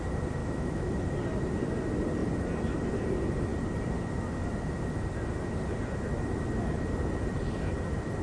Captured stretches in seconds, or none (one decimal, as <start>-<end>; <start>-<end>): 0.0-0.4; 0.9-8.2

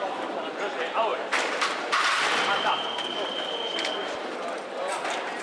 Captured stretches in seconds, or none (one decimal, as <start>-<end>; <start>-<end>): 0.0-1.1; 4.3-5.4